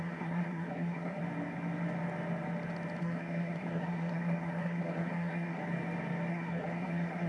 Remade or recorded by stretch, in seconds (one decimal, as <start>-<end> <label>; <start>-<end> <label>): 0.0-1.2 remade; 1.2-3.0 recorded; 3.0-5.6 remade; 5.6-6.3 recorded; 6.3-7.3 remade